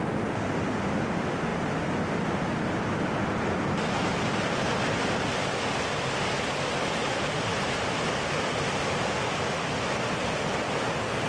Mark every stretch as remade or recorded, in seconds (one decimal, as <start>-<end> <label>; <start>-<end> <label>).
0.0-11.3 recorded